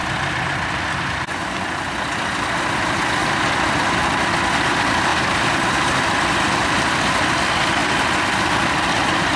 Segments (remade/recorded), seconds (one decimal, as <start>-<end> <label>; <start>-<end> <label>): 0.0-9.4 recorded